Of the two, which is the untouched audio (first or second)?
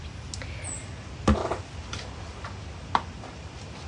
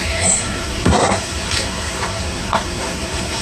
first